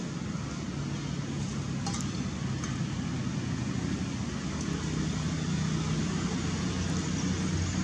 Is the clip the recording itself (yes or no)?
yes